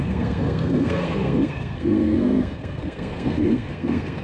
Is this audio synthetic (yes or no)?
yes